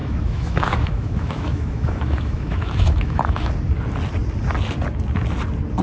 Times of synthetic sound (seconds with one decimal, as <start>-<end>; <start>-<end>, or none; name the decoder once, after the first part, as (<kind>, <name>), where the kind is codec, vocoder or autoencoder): 0.0-3.5 (autoencoder, DAC-VAE)